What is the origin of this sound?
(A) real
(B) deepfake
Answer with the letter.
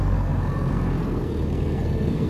B